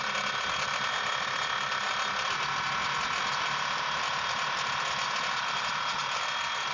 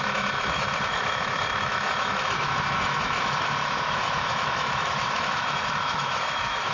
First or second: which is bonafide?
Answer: first